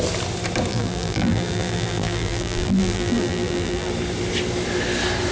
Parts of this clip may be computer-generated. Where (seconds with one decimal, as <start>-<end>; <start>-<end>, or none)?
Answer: 0.7-3.9